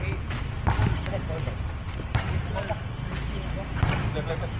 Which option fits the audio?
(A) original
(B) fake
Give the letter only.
A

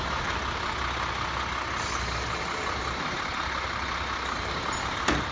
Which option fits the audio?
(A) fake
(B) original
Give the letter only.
B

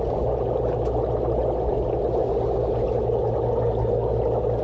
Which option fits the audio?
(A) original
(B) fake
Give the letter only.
A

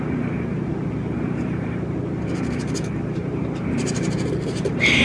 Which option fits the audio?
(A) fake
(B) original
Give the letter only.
A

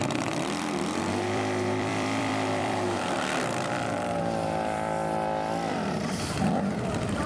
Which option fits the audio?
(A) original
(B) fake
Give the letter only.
B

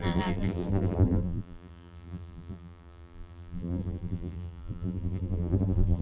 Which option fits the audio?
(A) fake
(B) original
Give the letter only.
A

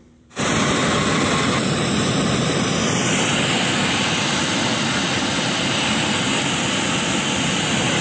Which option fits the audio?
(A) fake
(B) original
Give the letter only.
A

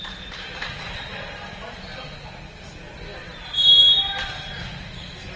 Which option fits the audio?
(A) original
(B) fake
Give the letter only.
A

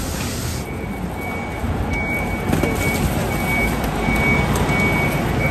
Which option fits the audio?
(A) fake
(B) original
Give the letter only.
B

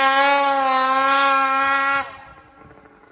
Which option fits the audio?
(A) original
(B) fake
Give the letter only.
A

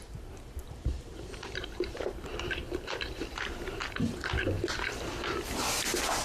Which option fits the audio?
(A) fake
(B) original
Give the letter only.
A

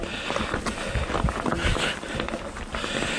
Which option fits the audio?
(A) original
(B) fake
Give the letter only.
A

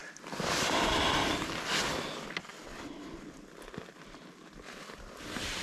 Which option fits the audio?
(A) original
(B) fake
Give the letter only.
A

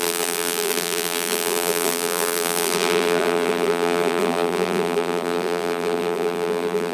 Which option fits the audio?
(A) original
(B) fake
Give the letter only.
B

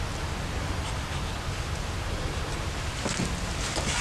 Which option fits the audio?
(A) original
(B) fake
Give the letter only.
A